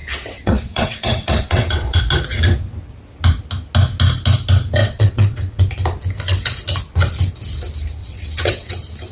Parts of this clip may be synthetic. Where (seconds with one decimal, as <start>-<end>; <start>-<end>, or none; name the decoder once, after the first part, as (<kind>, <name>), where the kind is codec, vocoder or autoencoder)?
0.0-2.0 (vocoder, WaveNeXt); 4.8-5.6; 8.0-8.7